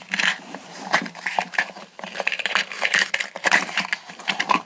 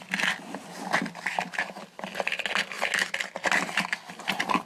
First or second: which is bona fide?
second